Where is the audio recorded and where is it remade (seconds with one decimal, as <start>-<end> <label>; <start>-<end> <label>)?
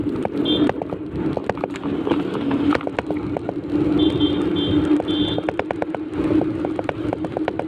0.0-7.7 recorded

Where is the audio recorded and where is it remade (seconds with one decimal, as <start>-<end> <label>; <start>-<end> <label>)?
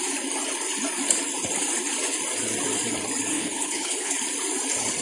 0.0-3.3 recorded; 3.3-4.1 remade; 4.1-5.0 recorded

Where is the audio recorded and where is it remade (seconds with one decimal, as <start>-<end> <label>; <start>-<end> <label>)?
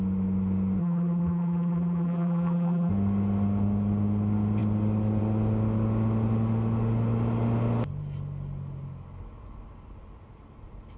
0.0-0.8 recorded; 0.8-2.9 remade; 2.9-11.0 recorded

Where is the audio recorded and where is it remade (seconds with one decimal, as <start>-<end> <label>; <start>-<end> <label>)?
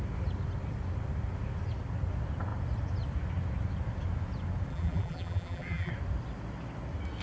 0.0-4.7 recorded; 4.7-5.9 remade; 5.9-7.2 recorded